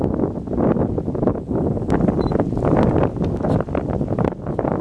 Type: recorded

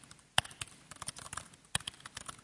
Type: recorded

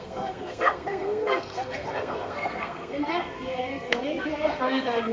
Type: remade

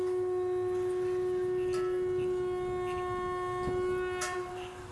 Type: recorded